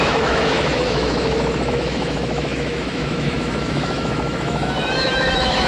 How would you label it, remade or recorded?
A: remade